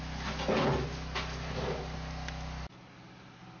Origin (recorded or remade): recorded